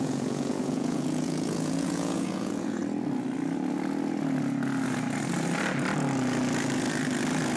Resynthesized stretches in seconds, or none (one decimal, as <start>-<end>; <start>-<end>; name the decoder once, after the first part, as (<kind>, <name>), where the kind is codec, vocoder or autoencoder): 0.0-2.8 (vocoder, Vocos)